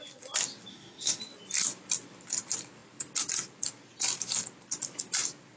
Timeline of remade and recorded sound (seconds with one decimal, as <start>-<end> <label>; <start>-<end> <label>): 0.0-0.7 recorded; 0.7-1.2 remade; 1.2-5.6 recorded